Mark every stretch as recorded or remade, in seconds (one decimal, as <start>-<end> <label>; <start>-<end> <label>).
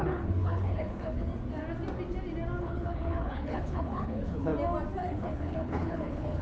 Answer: 0.0-1.3 remade; 1.3-2.6 recorded; 2.6-4.5 remade; 4.5-5.0 recorded; 5.0-6.4 remade